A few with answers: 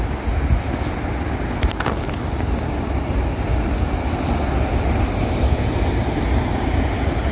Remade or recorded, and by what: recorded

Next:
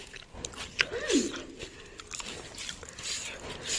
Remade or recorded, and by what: recorded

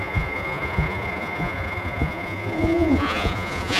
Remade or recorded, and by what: remade, vocoder, Vocos